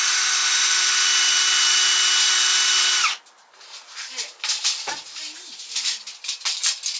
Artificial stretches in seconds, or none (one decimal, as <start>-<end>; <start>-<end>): none